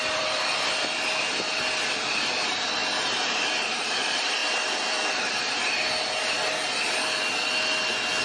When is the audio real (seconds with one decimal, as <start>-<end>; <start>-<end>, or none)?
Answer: 2.8-3.6; 4.4-8.2